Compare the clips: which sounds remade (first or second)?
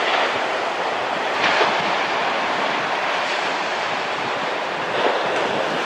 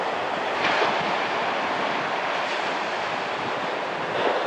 first